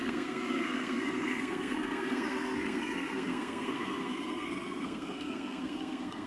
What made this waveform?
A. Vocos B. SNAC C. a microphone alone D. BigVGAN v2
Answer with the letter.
B